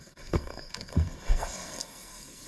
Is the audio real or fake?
fake